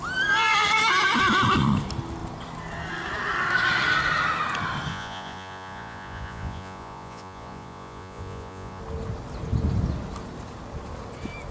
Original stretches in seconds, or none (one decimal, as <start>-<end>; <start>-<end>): 0.0-4.9; 8.8-11.5